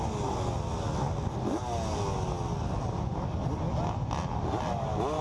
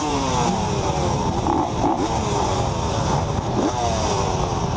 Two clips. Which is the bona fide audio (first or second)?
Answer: first